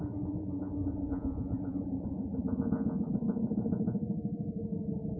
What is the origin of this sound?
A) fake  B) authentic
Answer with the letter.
A